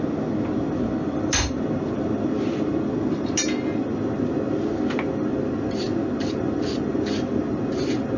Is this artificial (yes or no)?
no